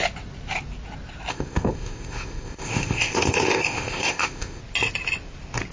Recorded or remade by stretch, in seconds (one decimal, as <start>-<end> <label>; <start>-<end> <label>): 0.0-1.3 recorded; 1.3-4.6 remade; 4.6-5.7 recorded